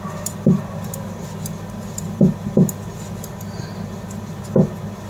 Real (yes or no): yes